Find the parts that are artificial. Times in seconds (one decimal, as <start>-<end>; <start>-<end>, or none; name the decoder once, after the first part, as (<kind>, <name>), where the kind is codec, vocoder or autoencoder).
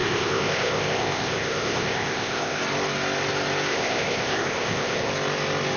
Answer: 0.0-2.6 (codec, ZipCodec); 3.7-5.1